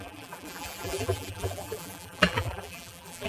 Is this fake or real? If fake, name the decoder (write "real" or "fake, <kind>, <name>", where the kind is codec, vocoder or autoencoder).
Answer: fake, vocoder, BigVGAN v2